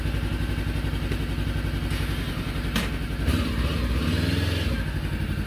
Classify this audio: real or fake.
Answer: real